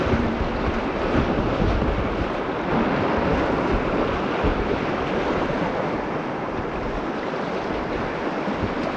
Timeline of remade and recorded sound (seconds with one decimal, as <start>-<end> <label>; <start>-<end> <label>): 0.0-9.0 recorded